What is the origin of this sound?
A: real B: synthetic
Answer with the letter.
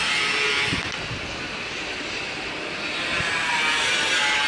A